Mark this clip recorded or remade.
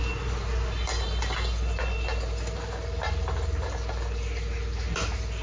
recorded